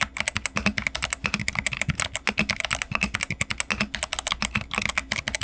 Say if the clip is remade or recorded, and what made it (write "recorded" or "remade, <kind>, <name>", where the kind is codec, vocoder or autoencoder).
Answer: recorded